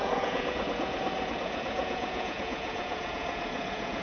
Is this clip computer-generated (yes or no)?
yes